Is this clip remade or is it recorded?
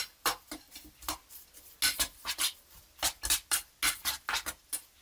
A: recorded